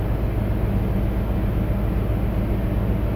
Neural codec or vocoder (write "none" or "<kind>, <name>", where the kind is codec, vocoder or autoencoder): none